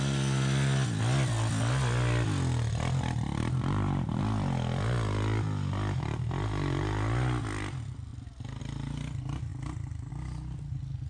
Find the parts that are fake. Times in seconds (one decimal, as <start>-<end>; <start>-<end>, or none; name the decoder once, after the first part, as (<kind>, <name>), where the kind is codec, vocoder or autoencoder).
3.4-4.2 (vocoder, BigVGAN v2)